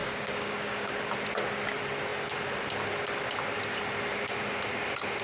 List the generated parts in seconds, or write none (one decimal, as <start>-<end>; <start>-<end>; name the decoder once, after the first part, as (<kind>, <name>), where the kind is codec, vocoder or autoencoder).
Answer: 0.0-0.9 (codec, DAC)